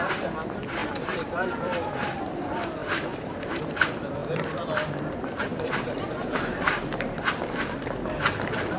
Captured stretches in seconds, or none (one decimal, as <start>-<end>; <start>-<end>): 0.0-0.8; 2.2-2.8; 3.7-5.5; 7.2-8.8